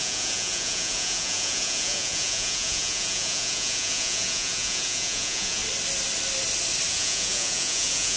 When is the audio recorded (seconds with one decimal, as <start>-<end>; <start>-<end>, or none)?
5.6-6.9

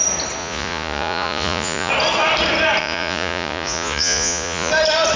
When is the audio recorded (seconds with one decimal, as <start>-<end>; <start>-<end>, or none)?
0.0-0.4; 1.9-2.8; 4.7-5.2

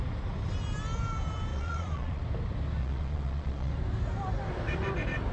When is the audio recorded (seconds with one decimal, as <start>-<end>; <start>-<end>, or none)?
0.0-1.5; 2.2-2.8; 3.7-5.3